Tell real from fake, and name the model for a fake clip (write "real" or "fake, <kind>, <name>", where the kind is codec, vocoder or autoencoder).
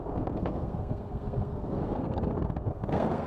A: fake, codec, SNAC